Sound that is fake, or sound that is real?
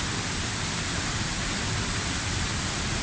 real